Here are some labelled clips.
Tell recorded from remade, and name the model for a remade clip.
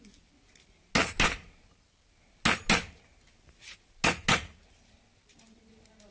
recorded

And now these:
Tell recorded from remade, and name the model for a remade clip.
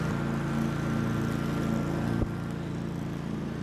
recorded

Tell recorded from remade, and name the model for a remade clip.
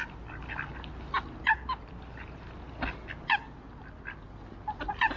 recorded